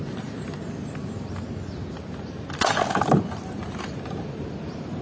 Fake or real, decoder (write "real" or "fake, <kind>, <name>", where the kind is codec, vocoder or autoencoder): real